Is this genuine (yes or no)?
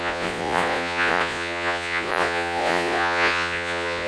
no